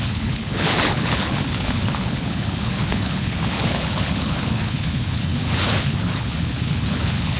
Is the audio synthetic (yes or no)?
yes